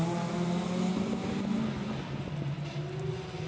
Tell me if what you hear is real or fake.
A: real